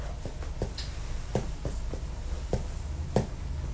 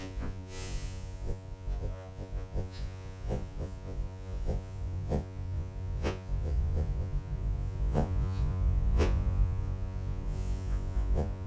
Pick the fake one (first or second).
second